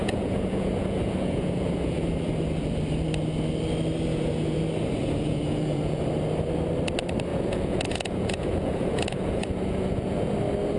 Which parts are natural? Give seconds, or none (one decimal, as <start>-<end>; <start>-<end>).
2.3-4.1; 4.6-5.0; 6.0-7.3; 10.3-10.8